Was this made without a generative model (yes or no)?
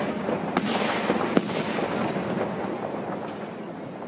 yes